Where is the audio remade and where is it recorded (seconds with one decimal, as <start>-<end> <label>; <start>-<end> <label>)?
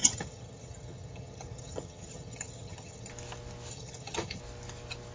0.0-3.1 remade; 3.1-3.7 recorded; 3.7-4.4 remade; 4.4-5.1 recorded